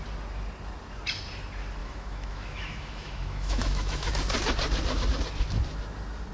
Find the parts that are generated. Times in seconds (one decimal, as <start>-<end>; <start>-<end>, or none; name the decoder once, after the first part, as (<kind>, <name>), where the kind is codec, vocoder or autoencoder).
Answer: 1.8-4.1 (autoencoder, DAC-VAE)